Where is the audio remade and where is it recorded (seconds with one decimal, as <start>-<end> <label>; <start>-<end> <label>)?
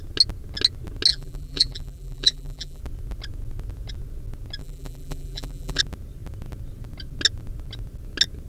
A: 0.0-1.1 recorded; 1.1-2.8 remade; 2.8-4.6 recorded; 4.6-5.8 remade; 5.8-8.5 recorded